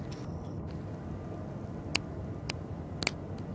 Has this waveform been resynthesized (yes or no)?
no